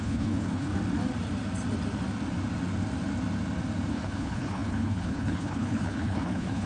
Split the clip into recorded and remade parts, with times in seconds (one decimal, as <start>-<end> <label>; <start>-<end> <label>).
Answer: 0.0-0.7 remade; 0.7-3.9 recorded; 3.9-6.7 remade